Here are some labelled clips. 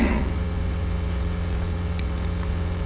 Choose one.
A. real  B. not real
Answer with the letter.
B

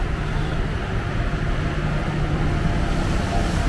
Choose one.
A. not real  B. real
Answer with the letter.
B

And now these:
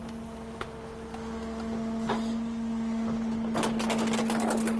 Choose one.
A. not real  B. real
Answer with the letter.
B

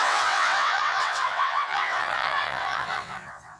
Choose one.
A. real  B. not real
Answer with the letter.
B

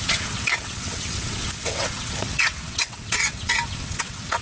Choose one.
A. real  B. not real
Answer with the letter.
B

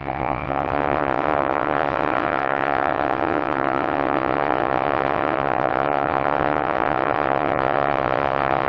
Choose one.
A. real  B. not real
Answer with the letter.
B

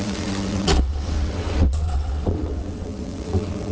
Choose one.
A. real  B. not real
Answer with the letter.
B